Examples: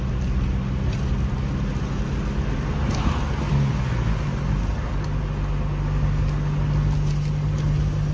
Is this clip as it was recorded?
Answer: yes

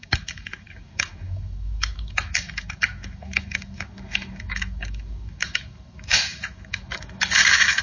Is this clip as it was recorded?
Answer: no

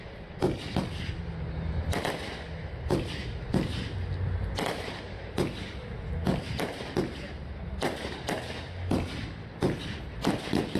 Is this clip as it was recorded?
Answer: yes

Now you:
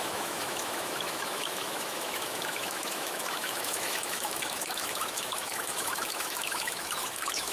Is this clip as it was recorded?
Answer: no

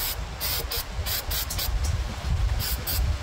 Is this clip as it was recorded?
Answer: yes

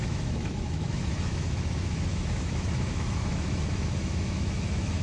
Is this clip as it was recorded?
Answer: no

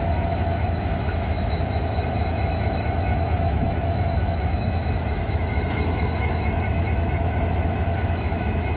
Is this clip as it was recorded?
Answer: no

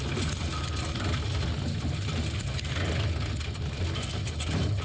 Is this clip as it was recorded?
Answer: yes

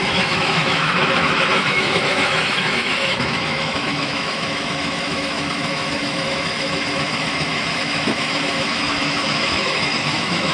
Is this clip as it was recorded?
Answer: no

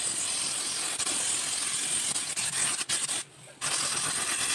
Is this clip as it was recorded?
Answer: yes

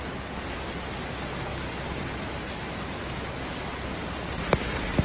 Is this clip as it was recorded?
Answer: yes